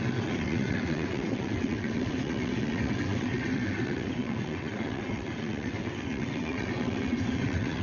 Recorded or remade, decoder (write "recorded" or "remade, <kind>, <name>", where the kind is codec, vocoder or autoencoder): remade, vocoder, WaveNeXt